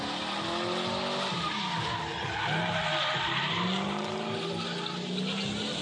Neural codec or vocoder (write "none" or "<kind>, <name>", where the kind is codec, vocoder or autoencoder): none